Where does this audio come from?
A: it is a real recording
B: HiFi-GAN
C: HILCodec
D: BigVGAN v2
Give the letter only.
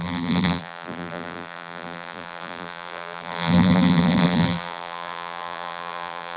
D